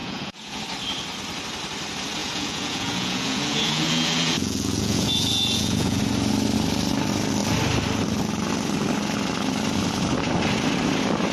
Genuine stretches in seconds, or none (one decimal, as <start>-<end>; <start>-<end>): 0.6-2.2; 6.0-11.3